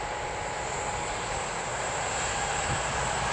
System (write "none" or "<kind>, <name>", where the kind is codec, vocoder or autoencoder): none